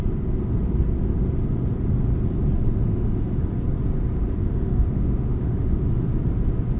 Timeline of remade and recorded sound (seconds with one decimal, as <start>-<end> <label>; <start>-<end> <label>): 0.0-2.9 recorded; 2.9-3.5 remade; 3.5-4.4 recorded; 4.4-5.9 remade; 5.9-6.8 recorded